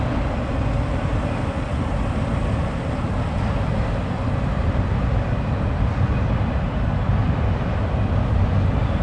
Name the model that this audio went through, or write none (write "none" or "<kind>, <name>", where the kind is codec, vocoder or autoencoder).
none